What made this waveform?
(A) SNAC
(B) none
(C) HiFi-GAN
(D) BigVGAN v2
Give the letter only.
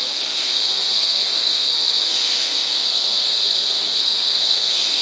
A